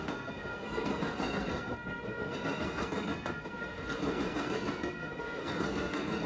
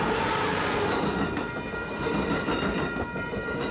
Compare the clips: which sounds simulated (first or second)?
first